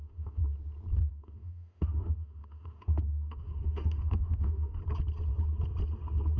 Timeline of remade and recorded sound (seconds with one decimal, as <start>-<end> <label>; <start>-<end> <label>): 0.0-0.4 remade; 0.4-1.1 recorded; 1.1-4.8 remade; 4.8-6.4 recorded